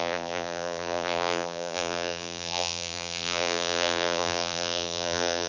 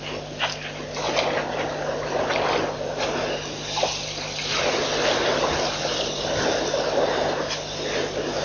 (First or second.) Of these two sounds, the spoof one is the first